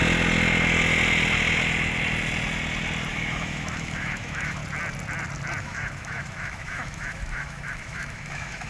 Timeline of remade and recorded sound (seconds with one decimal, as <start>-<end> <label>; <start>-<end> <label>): 0.0-3.1 recorded; 3.1-4.6 remade; 4.6-5.6 recorded; 5.6-8.7 remade